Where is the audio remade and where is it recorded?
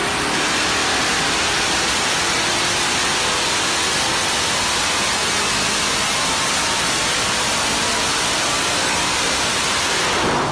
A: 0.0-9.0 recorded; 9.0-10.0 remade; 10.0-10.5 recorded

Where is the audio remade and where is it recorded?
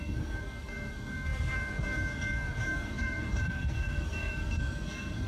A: 0.0-5.3 remade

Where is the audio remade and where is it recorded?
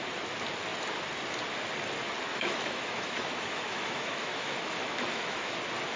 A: 0.0-2.3 recorded; 2.3-5.5 remade; 5.5-6.0 recorded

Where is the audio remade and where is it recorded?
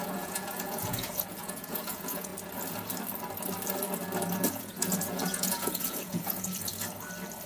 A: 0.0-2.3 remade; 2.3-4.5 recorded; 4.5-6.7 remade; 6.7-7.5 recorded